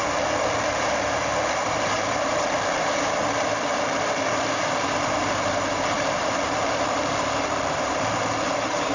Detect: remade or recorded remade